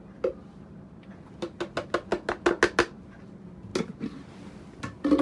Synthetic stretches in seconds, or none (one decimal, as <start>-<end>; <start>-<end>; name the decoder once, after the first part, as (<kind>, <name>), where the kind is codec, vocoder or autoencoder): none